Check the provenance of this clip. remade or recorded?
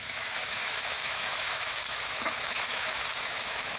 remade